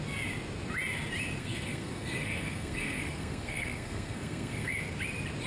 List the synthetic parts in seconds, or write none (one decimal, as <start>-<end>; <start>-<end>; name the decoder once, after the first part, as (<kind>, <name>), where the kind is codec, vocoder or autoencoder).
1.4-4.7 (codec, SNAC)